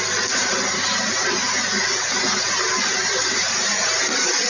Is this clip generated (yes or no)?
no